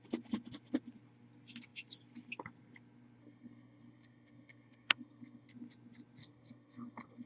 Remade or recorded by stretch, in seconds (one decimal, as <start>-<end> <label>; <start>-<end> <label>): 0.0-3.2 recorded; 3.2-5.5 remade; 5.5-6.2 recorded; 6.2-7.3 remade